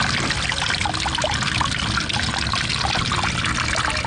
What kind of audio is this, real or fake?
real